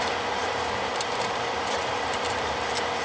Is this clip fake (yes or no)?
yes